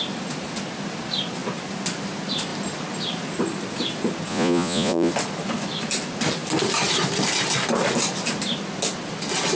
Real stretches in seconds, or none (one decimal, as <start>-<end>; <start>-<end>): 0.0-4.3; 5.1-9.6